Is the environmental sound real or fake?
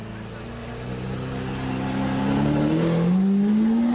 real